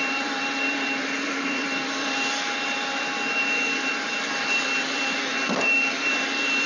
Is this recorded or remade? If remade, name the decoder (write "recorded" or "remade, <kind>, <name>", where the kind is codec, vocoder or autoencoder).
remade, vocoder, BigVGAN v2